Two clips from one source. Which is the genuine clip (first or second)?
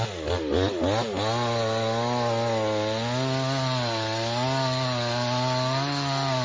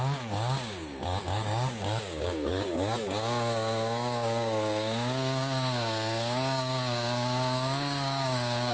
first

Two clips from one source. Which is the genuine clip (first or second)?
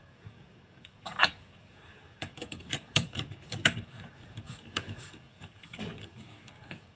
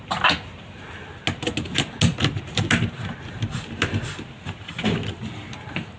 second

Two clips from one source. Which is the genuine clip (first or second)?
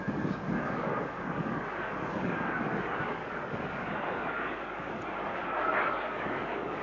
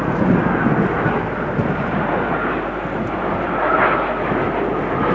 second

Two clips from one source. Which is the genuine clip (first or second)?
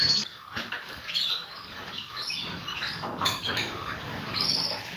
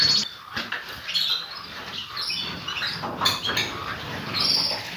second